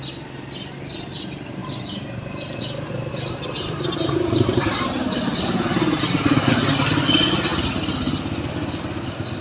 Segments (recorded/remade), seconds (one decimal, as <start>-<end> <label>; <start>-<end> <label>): 0.0-1.6 recorded; 1.6-6.5 remade; 6.5-9.4 recorded